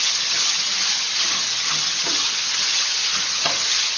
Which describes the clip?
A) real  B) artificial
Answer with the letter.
B